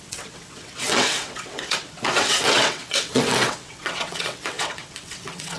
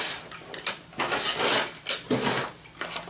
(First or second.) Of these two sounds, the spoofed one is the first